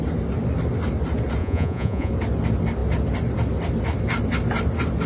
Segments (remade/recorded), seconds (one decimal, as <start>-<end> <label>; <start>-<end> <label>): 0.0-1.4 recorded; 1.4-2.1 remade; 2.1-5.1 recorded

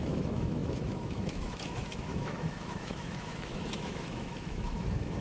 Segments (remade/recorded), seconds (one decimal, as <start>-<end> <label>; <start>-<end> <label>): 0.0-5.2 remade

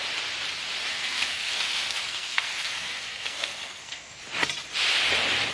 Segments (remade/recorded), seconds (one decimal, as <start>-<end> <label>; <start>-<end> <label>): 0.0-0.9 recorded; 0.9-4.2 remade; 4.2-5.5 recorded

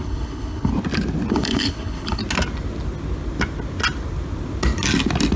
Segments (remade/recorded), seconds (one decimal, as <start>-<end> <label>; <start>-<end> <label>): 0.0-0.7 remade; 0.7-1.3 recorded; 1.3-2.2 remade; 2.2-5.4 recorded

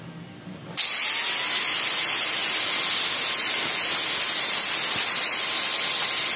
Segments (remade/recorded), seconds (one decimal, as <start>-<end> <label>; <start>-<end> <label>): 0.0-6.4 recorded

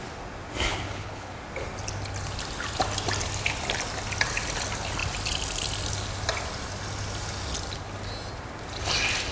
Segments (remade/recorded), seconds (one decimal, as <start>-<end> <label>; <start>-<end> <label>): 0.0-0.7 recorded; 0.7-1.3 remade; 1.3-9.3 recorded

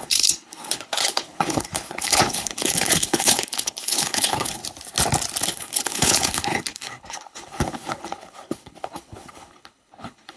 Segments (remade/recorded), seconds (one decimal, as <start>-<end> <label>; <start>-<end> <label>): 0.0-4.6 remade; 4.6-5.4 recorded; 5.4-10.4 remade

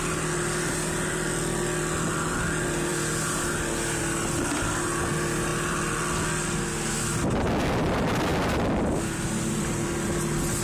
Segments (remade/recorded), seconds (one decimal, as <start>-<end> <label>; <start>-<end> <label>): 0.0-10.6 recorded